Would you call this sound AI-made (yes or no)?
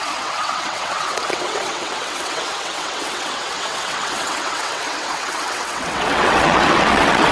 yes